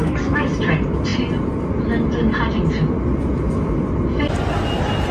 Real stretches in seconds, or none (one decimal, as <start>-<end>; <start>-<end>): 0.5-5.1

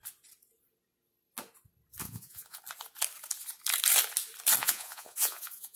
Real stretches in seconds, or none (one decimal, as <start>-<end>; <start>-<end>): 0.0-2.0; 2.6-4.6

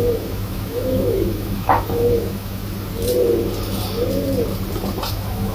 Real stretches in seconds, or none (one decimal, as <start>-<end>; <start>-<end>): 2.6-5.1

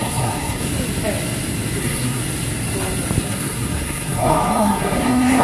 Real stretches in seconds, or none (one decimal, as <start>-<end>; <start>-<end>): 0.7-1.8; 2.2-3.2

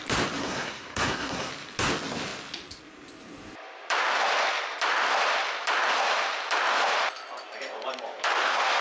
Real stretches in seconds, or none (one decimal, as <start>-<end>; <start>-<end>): 0.0-0.4; 1.5-8.8